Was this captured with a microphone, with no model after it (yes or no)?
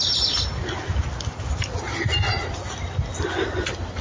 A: yes